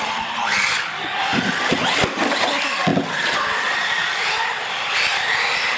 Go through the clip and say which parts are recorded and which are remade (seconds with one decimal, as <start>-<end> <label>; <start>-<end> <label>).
0.0-5.8 recorded